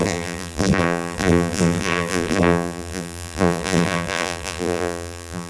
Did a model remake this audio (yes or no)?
yes